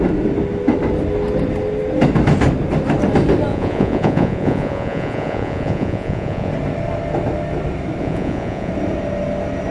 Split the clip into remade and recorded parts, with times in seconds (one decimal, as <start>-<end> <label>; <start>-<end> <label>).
0.0-3.5 recorded; 3.5-6.5 remade; 6.5-8.0 recorded; 8.0-8.7 remade; 8.7-9.7 recorded